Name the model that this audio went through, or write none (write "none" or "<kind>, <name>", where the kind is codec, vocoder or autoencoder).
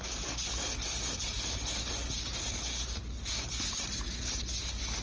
none